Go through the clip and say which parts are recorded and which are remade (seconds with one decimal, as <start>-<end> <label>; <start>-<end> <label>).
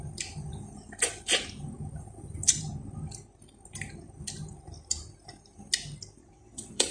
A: 0.0-6.2 recorded; 6.2-6.9 remade